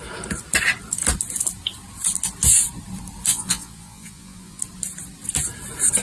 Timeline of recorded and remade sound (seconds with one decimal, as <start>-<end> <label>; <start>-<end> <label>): 0.0-3.3 recorded; 3.3-4.6 remade; 4.6-6.0 recorded